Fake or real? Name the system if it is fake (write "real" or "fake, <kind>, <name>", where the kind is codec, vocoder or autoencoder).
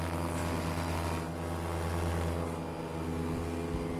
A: real